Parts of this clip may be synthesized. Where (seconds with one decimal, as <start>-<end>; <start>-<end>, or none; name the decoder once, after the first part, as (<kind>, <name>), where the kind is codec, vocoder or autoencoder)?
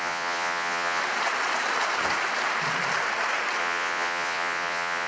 0.0-1.0 (vocoder, Vocos); 3.6-5.1